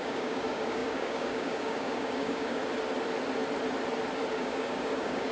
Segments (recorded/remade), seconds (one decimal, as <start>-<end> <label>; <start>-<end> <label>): 0.0-2.6 remade; 2.6-4.3 recorded; 4.3-5.3 remade